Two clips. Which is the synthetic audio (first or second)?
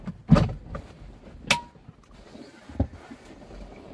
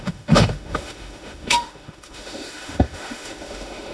second